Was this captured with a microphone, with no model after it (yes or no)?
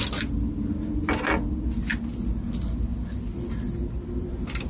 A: yes